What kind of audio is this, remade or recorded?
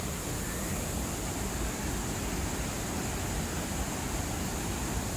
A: recorded